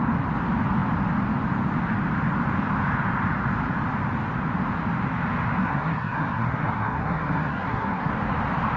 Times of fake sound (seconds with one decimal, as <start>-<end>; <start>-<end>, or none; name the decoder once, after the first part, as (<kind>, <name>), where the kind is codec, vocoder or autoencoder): 5.6-8.1 (codec, SNAC)